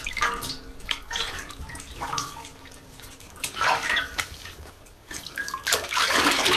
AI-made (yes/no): yes